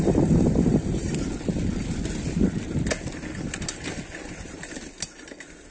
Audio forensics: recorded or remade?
recorded